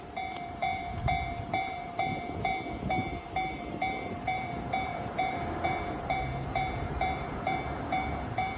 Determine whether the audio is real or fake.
fake